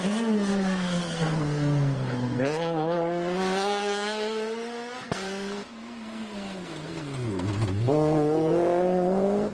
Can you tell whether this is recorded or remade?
remade